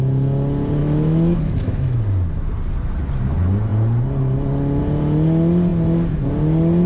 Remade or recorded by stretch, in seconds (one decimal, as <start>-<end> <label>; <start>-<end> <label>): 0.0-0.8 recorded; 0.8-2.0 remade; 2.0-6.9 recorded